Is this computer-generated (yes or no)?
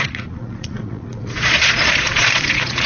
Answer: yes